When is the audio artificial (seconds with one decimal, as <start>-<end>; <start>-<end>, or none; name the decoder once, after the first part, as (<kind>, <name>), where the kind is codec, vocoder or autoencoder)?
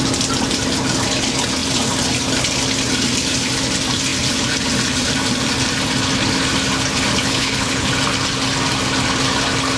7.2-7.9 (codec, HILCodec)